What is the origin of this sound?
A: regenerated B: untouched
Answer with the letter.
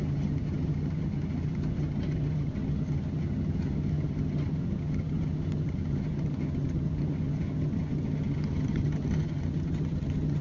A